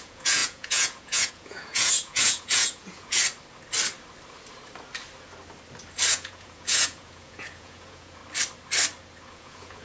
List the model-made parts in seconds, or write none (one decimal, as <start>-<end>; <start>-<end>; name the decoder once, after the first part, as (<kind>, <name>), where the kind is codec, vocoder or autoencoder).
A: 0.0-3.2 (vocoder, Vocos); 6.1-8.2; 9.3-9.8